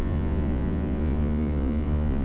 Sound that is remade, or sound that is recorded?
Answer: remade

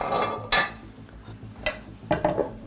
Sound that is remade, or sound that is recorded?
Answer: recorded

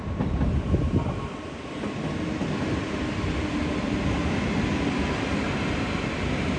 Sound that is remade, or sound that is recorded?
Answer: recorded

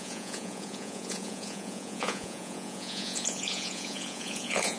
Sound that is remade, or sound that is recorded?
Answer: remade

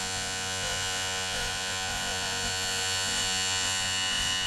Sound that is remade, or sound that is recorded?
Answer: remade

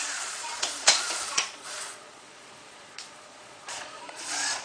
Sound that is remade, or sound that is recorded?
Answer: remade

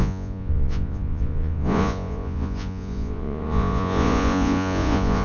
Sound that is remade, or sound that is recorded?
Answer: remade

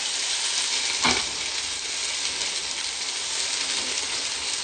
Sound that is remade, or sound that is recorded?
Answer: recorded